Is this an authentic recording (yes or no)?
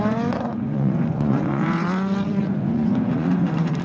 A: no